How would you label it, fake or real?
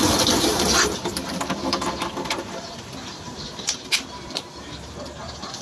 fake